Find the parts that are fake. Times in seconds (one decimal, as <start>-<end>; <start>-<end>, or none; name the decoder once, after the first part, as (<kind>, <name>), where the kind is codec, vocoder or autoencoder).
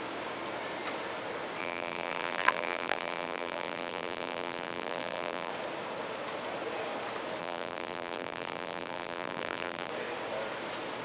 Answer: 1.6-5.5 (vocoder, BigVGAN v2); 7.4-9.9